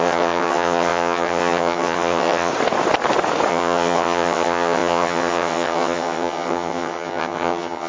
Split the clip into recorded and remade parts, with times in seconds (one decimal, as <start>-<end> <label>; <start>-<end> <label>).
0.0-2.5 remade; 2.5-3.5 recorded; 3.5-7.9 remade